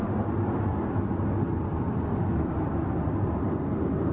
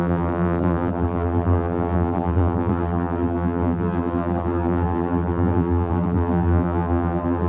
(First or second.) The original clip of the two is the first